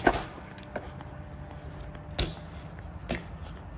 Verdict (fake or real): real